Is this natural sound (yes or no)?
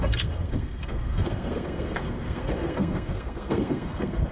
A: no